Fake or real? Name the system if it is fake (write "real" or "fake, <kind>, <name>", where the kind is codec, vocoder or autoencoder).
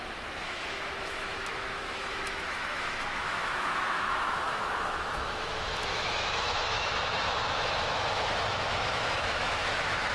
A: fake, autoencoder, DAC-VAE